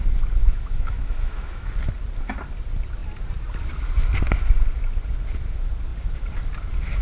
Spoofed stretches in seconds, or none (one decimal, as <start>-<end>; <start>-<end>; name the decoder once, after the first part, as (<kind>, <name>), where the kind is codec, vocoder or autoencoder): 0.4-1.7 (autoencoder, DAC-VAE)